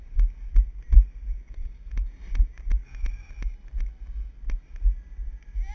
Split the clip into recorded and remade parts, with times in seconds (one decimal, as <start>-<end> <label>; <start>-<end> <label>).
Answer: 0.0-5.7 recorded